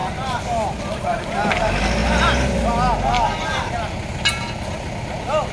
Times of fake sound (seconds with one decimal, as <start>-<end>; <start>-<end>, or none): none